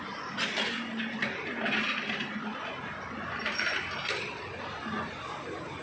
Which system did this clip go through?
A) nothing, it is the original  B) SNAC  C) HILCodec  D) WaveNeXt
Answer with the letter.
A